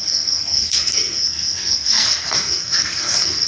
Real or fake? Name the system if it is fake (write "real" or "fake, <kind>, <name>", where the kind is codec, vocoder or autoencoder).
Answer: fake, codec, SNAC